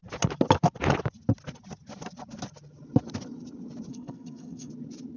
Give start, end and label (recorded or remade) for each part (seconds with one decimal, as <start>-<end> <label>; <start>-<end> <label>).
0.0-3.9 recorded; 3.9-4.7 remade; 4.7-5.2 recorded